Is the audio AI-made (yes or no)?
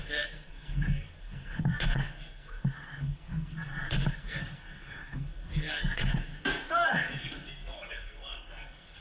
yes